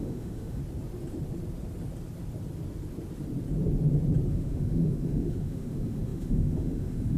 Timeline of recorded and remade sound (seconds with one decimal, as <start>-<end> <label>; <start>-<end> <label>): 0.0-0.6 remade; 0.6-4.3 recorded; 4.3-7.2 remade